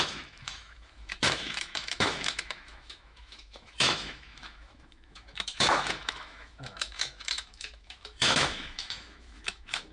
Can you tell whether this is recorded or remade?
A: remade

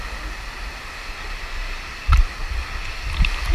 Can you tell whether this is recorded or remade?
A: recorded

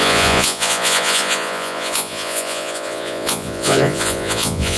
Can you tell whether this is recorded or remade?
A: remade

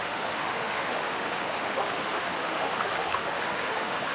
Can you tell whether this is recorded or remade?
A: remade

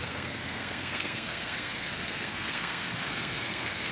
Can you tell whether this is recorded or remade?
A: remade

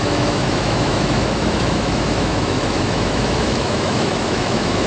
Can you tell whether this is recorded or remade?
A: remade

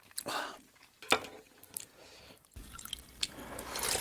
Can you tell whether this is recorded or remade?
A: recorded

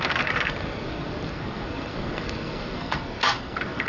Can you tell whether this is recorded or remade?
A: remade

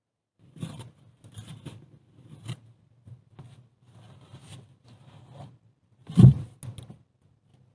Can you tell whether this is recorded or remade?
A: recorded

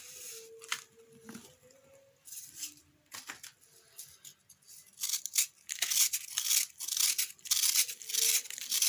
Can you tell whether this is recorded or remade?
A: recorded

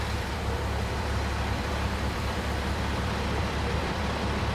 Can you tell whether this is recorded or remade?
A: remade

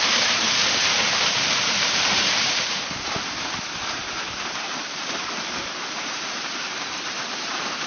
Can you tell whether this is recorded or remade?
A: remade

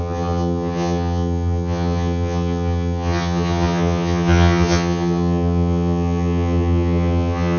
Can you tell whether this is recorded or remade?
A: remade